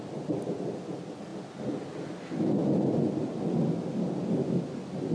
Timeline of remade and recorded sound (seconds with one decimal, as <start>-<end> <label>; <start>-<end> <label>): 0.0-5.1 recorded